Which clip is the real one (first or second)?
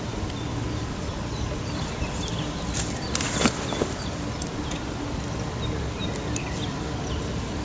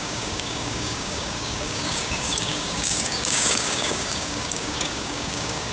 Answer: first